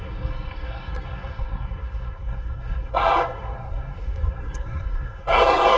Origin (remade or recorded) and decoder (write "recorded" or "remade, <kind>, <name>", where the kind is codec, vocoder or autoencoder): remade, codec, SNAC